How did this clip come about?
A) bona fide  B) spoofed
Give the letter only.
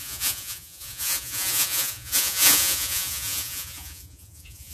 B